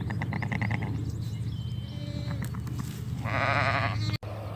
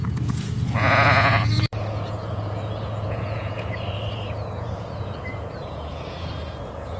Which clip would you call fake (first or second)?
second